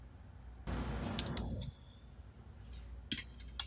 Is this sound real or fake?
real